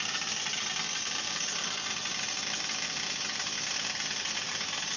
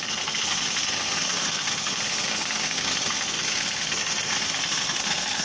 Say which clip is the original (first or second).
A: first